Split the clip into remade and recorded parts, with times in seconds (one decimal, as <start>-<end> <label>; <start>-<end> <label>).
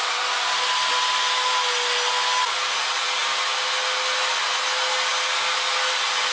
0.0-6.3 recorded